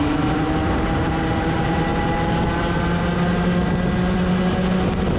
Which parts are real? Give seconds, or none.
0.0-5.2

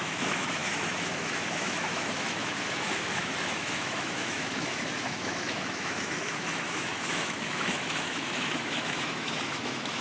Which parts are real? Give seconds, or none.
none

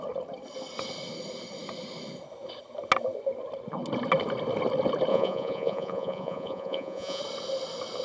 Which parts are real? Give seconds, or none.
0.0-5.1; 7.2-8.0

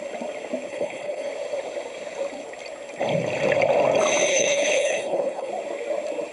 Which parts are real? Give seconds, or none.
0.0-0.7; 1.3-4.3; 5.5-6.3

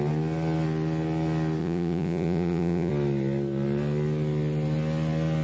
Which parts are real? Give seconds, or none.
0.0-1.6; 2.9-5.4